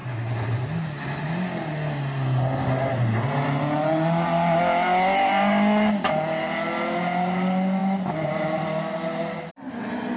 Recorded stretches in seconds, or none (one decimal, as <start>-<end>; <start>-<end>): 0.0-10.2

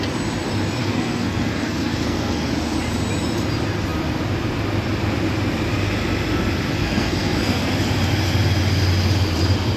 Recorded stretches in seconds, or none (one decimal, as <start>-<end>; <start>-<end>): 0.0-0.8; 2.5-6.8; 7.7-9.8

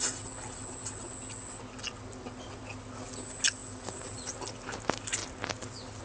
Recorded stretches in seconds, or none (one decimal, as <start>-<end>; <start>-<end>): 0.0-6.0

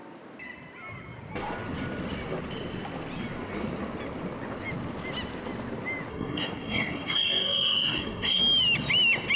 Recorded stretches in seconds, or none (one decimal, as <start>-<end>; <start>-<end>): 0.0-6.1; 8.4-9.4

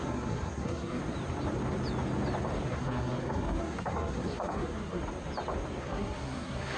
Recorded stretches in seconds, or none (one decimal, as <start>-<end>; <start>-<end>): 1.0-2.7; 5.0-5.8

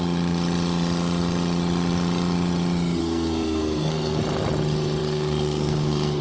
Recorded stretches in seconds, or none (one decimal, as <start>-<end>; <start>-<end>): 0.0-3.0; 4.2-5.0

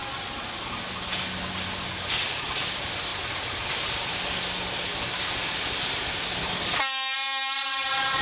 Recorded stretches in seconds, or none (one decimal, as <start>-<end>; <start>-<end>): 0.0-8.2

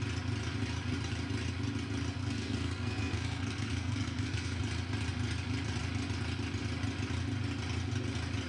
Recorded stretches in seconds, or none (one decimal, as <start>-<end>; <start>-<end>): 0.0-2.2; 4.6-8.5